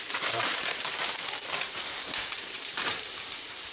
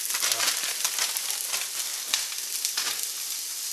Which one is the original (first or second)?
second